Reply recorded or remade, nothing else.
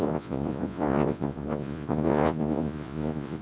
remade